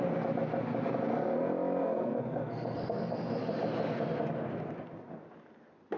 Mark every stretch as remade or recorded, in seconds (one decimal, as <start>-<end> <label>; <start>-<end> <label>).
0.0-1.8 recorded; 1.8-3.3 remade; 3.3-6.0 recorded